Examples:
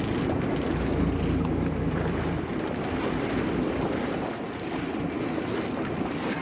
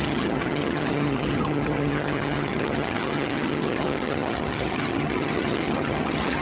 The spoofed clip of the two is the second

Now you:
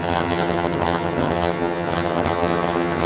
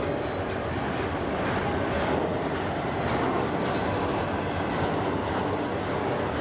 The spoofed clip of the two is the first